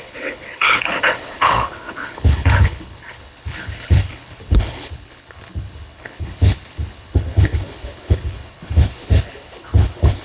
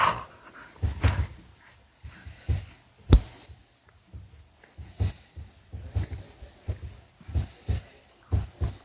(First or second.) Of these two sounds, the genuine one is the second